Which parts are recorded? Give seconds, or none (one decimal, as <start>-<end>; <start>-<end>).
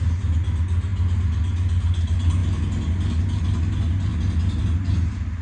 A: 0.0-5.4